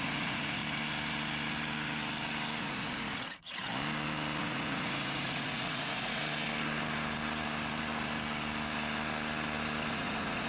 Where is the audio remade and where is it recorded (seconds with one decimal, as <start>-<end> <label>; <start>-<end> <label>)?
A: 0.0-0.6 remade; 0.6-2.6 recorded; 2.6-3.7 remade; 3.7-4.4 recorded; 4.4-6.2 remade; 6.2-9.9 recorded; 9.9-10.5 remade